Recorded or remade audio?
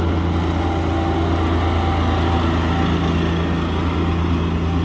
recorded